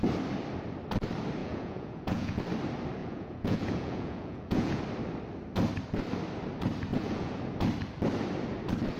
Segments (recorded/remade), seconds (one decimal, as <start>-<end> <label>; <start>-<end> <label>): 0.0-1.4 recorded; 1.4-2.4 remade; 2.4-3.0 recorded; 3.0-4.8 remade; 4.8-6.9 recorded; 6.9-7.4 remade; 7.4-9.0 recorded